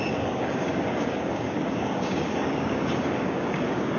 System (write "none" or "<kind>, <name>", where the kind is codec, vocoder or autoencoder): codec, DAC